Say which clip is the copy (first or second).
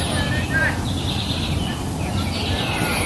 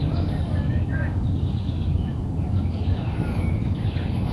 second